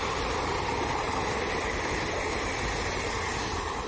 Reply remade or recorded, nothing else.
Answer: recorded